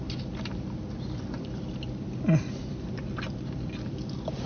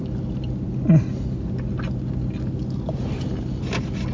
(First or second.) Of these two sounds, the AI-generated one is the first